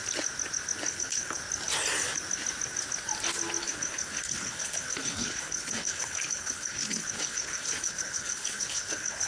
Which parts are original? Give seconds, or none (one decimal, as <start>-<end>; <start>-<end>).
0.0-0.9; 1.4-3.6